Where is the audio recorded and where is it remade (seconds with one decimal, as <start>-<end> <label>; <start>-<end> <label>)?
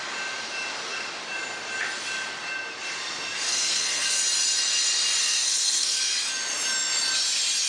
0.0-3.5 recorded; 3.5-4.2 remade; 4.2-5.2 recorded; 5.2-6.0 remade; 6.0-7.7 recorded